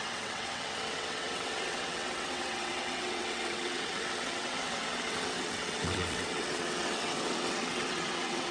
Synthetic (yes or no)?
yes